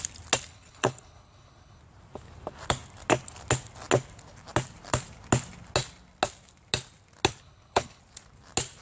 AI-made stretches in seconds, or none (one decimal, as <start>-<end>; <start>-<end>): 0.5-1.8; 7.4-8.0